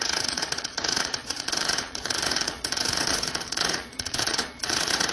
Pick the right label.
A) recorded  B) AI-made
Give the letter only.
B